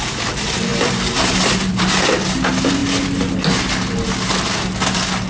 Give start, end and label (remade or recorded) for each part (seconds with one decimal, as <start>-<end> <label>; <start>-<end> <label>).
0.0-5.3 recorded